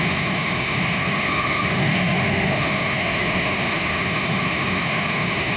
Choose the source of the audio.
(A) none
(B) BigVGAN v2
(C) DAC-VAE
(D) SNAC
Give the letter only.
C